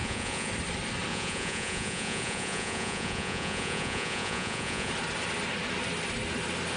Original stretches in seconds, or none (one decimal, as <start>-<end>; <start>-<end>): 0.5-1.1; 4.9-6.8